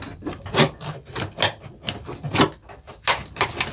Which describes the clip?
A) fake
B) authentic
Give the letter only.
B